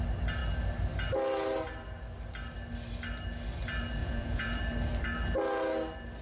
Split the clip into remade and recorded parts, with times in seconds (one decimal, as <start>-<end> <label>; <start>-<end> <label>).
0.0-4.0 recorded; 4.0-4.6 remade; 4.6-6.2 recorded